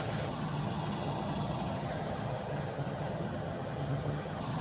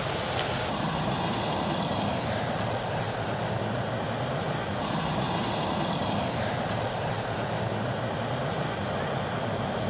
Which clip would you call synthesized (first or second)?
first